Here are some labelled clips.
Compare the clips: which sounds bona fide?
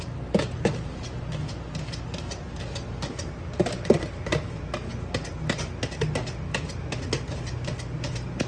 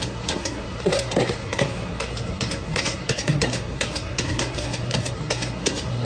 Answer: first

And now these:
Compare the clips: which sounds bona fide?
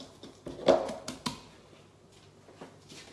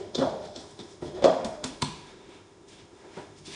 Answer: first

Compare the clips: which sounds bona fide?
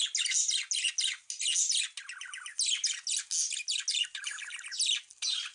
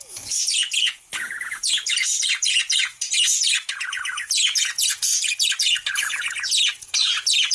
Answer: first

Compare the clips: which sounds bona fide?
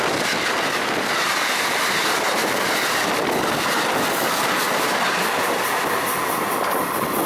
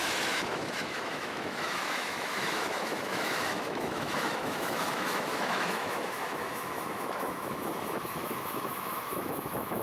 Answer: first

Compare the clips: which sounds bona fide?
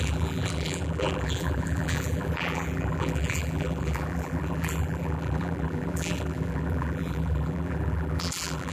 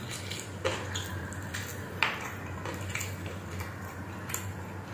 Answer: second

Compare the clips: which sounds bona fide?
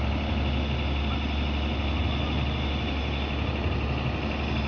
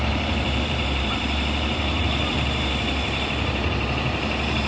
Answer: first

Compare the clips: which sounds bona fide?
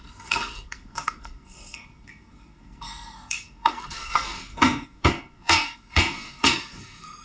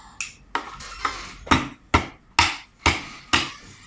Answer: second